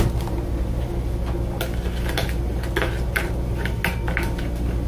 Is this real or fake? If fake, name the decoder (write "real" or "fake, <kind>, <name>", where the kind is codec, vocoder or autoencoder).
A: real